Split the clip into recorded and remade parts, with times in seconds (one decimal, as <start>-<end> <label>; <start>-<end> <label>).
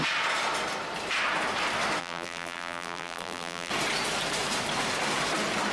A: 0.0-2.0 recorded; 2.0-3.7 remade; 3.7-5.7 recorded